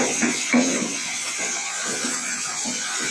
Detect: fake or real fake